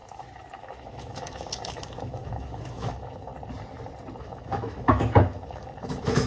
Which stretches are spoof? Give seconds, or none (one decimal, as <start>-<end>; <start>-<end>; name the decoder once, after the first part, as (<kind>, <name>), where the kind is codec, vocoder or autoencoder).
0.6-3.3 (autoencoder, DAC-VAE); 4.2-6.3